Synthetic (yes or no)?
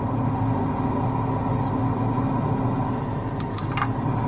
no